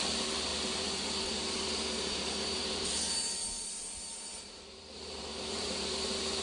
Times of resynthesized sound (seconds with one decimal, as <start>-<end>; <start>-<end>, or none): 0.0-6.4